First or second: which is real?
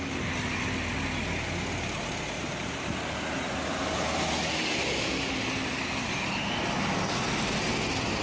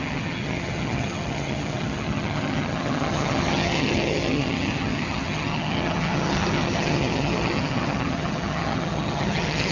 first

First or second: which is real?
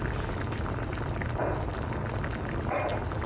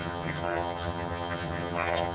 first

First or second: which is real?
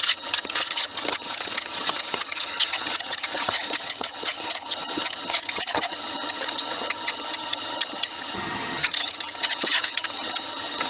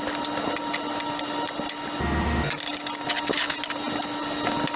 second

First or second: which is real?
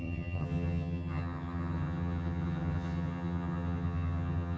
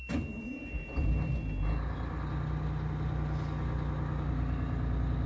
second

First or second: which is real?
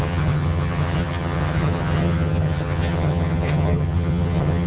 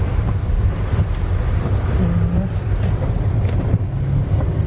second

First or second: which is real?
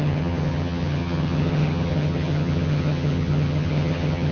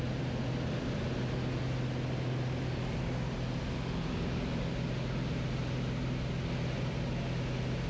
second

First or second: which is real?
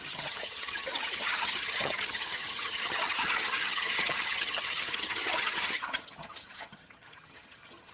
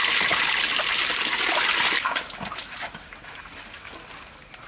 second